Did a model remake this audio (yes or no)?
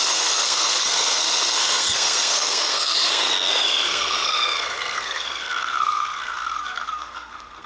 yes